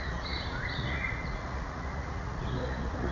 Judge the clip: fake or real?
fake